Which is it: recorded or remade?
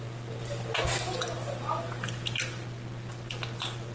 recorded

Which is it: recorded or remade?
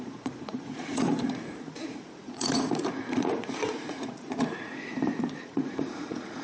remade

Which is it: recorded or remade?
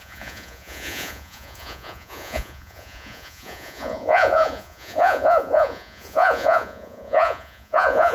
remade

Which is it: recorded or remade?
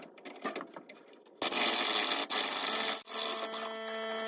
recorded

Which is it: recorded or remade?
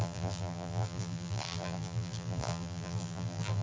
remade